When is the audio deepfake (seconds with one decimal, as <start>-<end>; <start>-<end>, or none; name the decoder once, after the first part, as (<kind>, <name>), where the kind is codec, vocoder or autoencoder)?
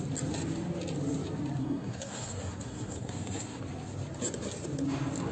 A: 1.6-3.6 (codec, SNAC)